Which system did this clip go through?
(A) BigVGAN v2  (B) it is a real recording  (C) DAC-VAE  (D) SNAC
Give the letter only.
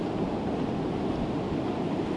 B